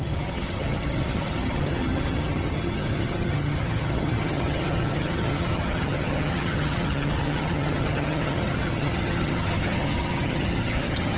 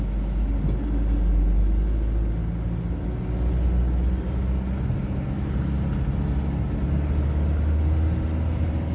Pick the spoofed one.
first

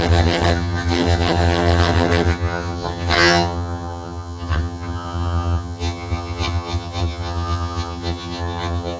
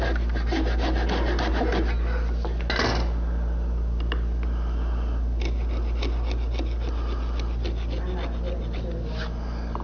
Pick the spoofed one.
first